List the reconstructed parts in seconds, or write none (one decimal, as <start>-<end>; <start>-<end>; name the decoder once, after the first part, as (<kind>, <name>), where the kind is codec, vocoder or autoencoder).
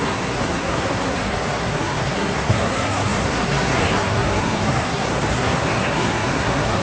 0.0-6.8 (codec, SNAC)